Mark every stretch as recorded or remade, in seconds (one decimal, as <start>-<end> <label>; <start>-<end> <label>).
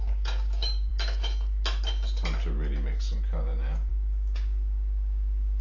0.0-0.9 remade; 0.9-3.9 recorded; 3.9-5.6 remade